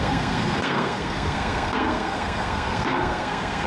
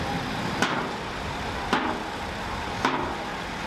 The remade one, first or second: first